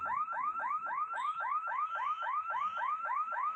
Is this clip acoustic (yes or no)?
no